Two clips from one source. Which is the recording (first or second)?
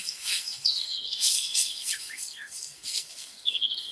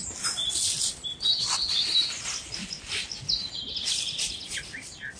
second